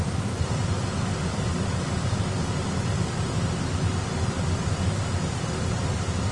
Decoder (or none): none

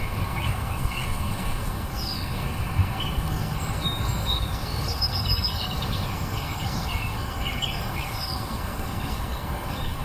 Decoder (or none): codec, SNAC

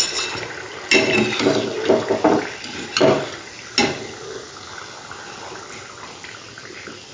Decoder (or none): none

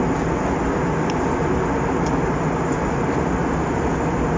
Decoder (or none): none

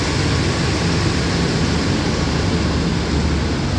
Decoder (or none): none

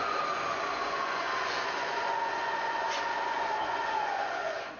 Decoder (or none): vocoder, Vocos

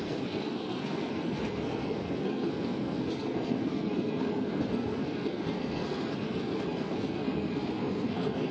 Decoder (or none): codec, SNAC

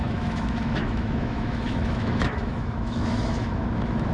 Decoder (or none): autoencoder, DAC-VAE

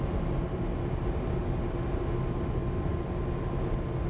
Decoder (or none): none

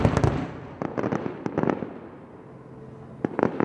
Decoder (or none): none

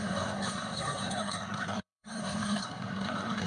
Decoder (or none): codec, SNAC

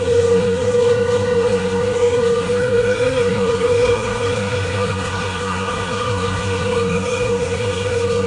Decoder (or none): codec, SNAC